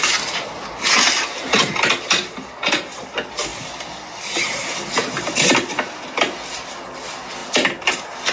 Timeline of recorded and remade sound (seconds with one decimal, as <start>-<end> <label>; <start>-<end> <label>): 0.0-8.3 recorded